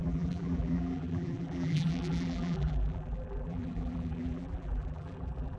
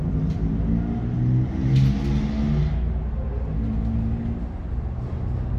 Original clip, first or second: second